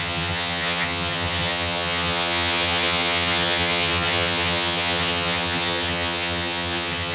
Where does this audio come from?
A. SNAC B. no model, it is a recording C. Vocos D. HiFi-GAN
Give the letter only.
D